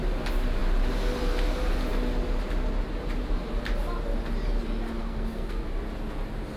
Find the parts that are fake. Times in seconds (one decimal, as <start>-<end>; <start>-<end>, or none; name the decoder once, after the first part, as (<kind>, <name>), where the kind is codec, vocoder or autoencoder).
5.0-5.6 (codec, SNAC)